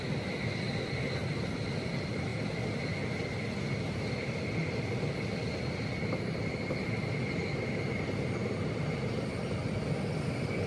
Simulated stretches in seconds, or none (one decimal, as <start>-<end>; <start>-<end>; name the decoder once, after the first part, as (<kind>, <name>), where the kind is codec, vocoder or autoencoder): none